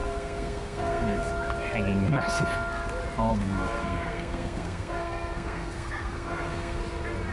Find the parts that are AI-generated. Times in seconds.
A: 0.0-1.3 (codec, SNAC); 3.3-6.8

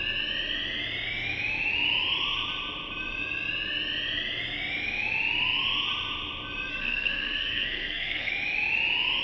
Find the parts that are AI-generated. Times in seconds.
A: 6.7-8.3 (codec, SNAC)

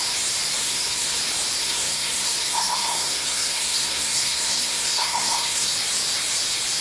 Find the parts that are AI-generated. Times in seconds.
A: 0.6-1.2 (codec, SNAC); 1.6-5.7

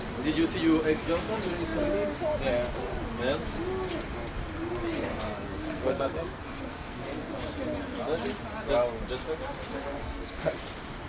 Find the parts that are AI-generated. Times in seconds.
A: 5.1-7.3 (codec, SNAC); 9.7-10.5